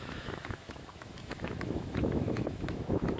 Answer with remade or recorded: remade